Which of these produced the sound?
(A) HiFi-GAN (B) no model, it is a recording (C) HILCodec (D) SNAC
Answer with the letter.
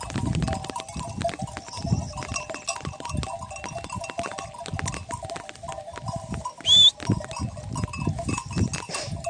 B